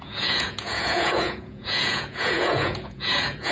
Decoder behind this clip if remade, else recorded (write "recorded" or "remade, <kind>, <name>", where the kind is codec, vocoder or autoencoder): remade, vocoder, Vocos